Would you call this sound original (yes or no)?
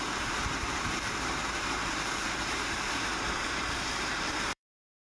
no